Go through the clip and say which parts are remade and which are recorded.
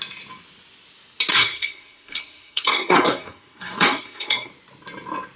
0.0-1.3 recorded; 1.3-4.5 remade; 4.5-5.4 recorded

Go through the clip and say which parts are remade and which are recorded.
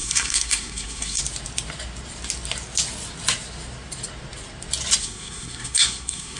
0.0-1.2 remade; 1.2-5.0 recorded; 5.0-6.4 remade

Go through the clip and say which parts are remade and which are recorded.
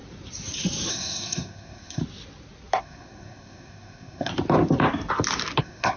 0.0-0.9 recorded; 0.9-2.0 remade; 2.0-2.8 recorded; 2.8-4.3 remade; 4.3-5.6 recorded; 5.6-6.0 remade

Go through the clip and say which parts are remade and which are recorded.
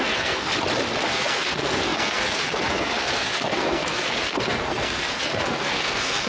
0.0-0.5 remade; 0.5-1.1 recorded; 1.1-6.3 remade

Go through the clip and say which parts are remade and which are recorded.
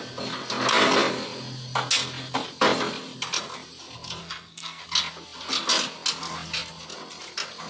0.0-4.2 recorded; 4.2-4.8 remade; 4.8-7.7 recorded